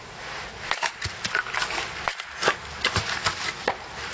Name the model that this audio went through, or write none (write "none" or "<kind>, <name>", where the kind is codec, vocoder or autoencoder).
none